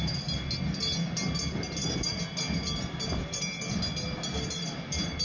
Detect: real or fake real